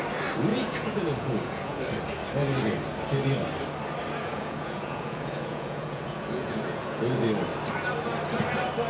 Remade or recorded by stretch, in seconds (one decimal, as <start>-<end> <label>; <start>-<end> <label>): 0.0-0.5 recorded; 0.5-1.8 remade; 1.8-4.2 recorded; 4.2-7.0 remade; 7.0-8.9 recorded